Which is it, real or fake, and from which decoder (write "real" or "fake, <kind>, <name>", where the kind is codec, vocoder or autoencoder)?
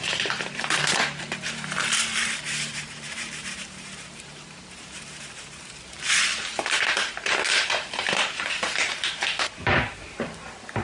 fake, vocoder, BigVGAN v2